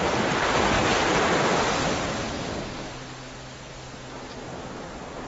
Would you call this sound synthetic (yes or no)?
no